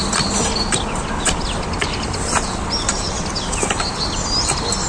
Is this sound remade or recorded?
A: recorded